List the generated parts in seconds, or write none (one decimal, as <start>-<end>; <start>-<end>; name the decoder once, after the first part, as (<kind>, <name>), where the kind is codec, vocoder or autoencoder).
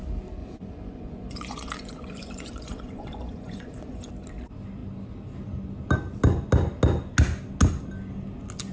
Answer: 0.4-4.1 (vocoder, Vocos)